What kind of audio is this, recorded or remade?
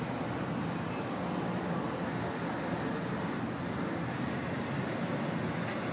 recorded